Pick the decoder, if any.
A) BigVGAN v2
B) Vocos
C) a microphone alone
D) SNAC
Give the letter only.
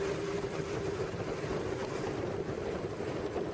A